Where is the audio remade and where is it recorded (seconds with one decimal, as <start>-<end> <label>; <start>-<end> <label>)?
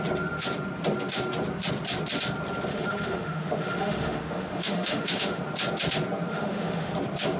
0.0-2.7 recorded; 2.7-5.4 remade; 5.4-6.3 recorded; 6.3-6.9 remade; 6.9-7.4 recorded